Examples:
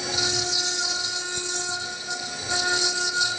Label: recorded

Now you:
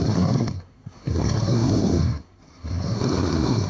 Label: remade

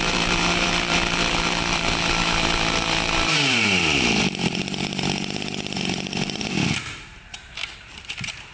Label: remade